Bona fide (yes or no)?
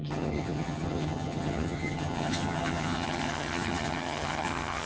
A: no